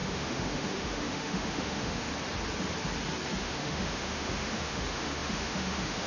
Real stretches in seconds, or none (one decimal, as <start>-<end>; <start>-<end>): 2.1-3.4